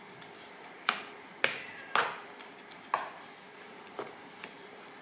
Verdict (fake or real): real